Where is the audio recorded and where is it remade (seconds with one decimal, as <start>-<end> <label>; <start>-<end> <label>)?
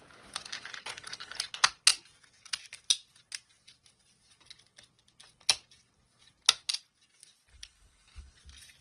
0.0-0.9 recorded; 0.9-1.4 remade; 1.4-7.5 recorded; 7.5-8.4 remade; 8.4-8.8 recorded